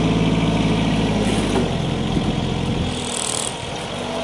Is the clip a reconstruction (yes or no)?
no